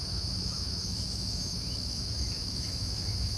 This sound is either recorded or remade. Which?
remade